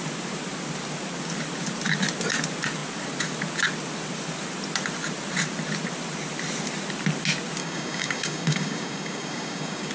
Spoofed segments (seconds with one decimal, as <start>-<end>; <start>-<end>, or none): 7.6-9.9